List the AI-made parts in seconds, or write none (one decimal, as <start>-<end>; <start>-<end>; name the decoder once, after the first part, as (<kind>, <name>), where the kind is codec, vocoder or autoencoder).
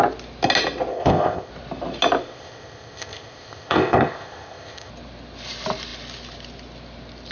0.9-1.5 (codec, ZipCodec); 2.2-4.9